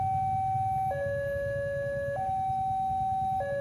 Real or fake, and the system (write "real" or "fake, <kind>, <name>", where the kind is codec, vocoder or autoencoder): real